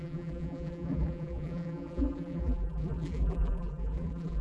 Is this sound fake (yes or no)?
yes